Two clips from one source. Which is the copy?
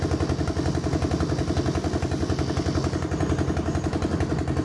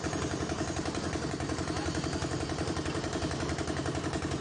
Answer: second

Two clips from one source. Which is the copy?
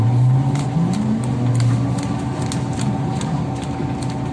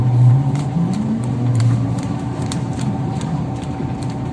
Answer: second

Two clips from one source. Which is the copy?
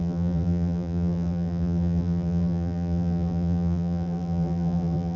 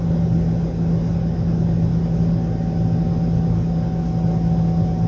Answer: first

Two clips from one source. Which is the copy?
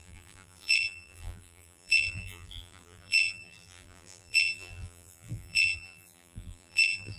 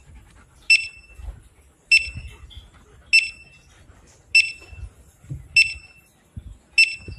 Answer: first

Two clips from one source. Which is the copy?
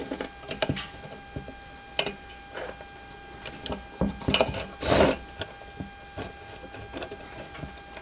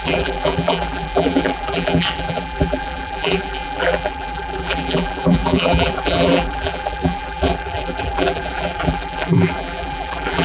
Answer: second